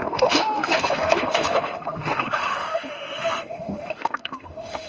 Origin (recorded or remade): remade